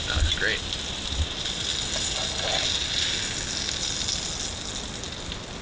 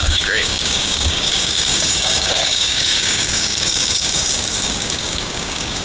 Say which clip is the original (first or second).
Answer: first